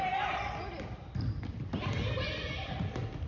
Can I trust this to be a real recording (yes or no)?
yes